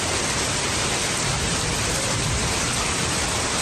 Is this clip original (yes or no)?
no